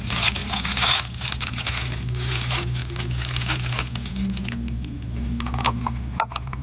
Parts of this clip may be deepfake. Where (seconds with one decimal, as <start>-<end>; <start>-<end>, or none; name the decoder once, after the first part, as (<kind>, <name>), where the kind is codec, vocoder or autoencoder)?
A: none